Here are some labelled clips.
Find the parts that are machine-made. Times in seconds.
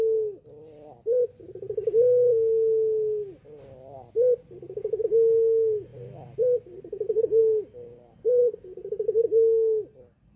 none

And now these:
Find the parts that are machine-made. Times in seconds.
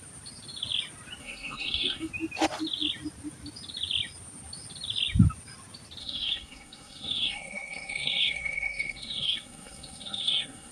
1.2-2.1 (codec, SNAC); 6.0-10.7